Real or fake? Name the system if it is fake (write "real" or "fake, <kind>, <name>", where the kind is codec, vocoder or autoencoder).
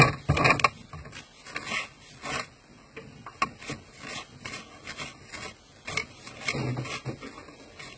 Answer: real